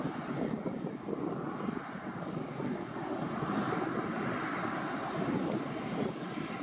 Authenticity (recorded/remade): recorded